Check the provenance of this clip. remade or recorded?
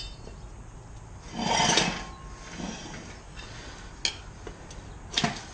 recorded